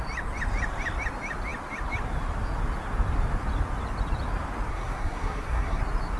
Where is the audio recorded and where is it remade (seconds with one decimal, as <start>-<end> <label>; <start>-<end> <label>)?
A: 0.0-4.7 recorded; 4.7-5.8 remade; 5.8-6.2 recorded